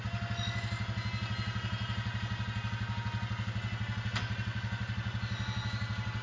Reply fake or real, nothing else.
real